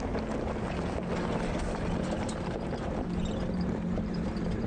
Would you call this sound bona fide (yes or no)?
no